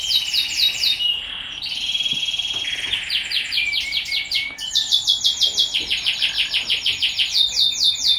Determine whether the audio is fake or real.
real